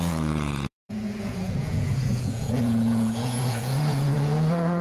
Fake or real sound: fake